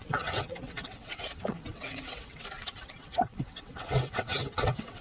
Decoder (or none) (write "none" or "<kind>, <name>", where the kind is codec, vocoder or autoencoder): vocoder, WaveNeXt